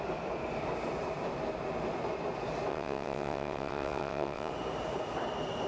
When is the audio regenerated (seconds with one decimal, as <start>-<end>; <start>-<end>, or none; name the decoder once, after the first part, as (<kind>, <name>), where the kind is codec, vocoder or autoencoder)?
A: 2.7-4.5 (vocoder, WaveNeXt)